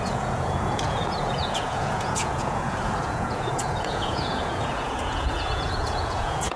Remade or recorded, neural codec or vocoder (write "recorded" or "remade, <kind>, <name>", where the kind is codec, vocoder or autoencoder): remade, vocoder, Vocos